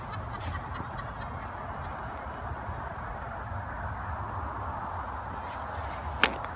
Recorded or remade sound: recorded